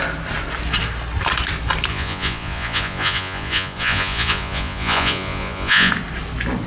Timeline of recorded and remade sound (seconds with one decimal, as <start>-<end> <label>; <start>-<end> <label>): 0.0-1.9 recorded; 1.9-5.9 remade; 5.9-6.7 recorded